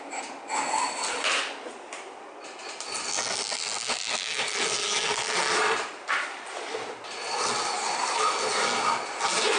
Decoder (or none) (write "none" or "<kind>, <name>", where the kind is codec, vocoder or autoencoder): none